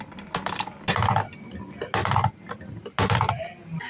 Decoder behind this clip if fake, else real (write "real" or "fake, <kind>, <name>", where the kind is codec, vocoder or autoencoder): real